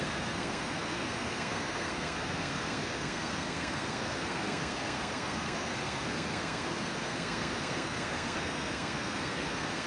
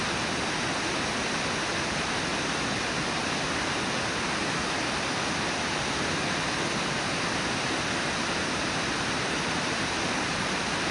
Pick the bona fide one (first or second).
second